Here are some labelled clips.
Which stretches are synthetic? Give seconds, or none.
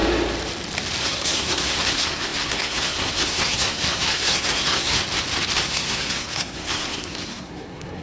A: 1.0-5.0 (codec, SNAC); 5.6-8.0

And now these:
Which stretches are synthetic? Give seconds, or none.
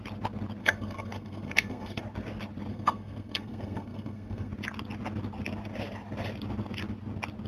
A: 0.6-2.0 (codec, SNAC); 2.7-4.5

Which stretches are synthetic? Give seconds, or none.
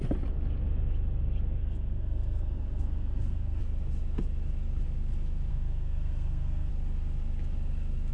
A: 1.6-3.6 (codec, SNAC); 5.5-6.7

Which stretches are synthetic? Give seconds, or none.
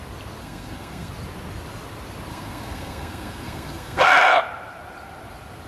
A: 0.4-1.1 (codec, SNAC); 2.3-4.1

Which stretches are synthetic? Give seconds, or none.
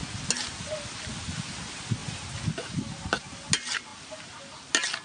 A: none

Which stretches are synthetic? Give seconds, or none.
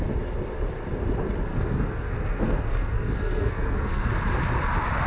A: 1.5-4.1 (codec, SNAC)